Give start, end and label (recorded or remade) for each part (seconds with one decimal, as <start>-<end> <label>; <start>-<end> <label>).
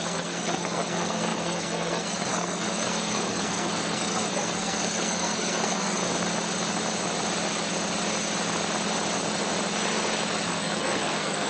0.0-6.0 remade; 6.0-10.5 recorded; 10.5-11.5 remade